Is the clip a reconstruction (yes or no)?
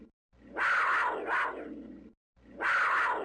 no